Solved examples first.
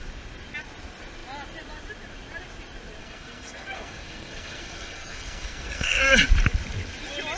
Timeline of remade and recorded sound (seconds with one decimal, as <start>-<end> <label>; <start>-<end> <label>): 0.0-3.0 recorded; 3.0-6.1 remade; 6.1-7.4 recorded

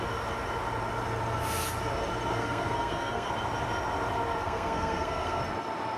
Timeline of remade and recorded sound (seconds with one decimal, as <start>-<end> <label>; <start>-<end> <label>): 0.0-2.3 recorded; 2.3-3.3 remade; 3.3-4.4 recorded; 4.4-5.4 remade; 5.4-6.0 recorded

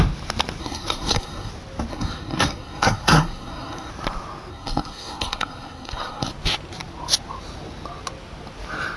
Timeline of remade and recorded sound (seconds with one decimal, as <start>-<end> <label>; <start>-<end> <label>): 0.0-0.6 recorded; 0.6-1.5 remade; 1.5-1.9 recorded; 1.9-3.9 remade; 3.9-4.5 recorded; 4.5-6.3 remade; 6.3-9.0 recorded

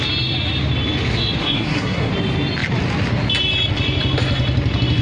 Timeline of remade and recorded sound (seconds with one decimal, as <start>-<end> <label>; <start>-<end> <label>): 0.0-1.4 recorded; 1.4-2.1 remade; 2.1-5.0 recorded

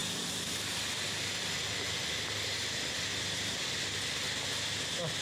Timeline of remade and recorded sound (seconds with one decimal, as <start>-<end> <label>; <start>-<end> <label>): 0.0-5.2 recorded

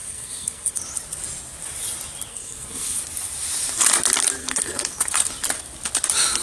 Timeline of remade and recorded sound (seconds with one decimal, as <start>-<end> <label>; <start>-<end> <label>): 0.0-0.8 remade; 0.8-2.3 recorded; 2.3-3.0 remade; 3.0-4.4 recorded; 4.4-5.3 remade; 5.3-6.4 recorded

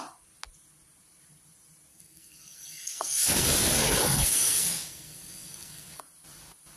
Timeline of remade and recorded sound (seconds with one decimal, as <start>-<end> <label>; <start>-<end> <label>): 0.0-1.9 recorded; 1.9-6.0 remade; 6.0-6.8 recorded

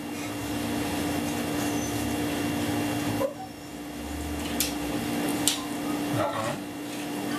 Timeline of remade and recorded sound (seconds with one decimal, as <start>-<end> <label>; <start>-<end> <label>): 0.0-7.4 recorded